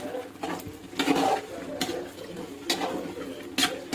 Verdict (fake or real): real